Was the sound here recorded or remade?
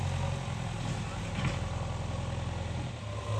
recorded